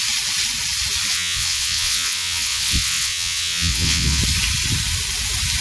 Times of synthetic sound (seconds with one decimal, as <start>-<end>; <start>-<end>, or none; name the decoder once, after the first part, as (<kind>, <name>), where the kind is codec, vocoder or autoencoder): 1.1-4.2 (vocoder, WaveNeXt)